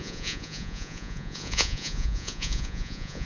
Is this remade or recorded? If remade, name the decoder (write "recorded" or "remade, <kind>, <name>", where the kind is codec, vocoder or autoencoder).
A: remade, vocoder, Vocos